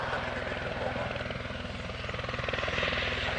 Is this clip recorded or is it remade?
recorded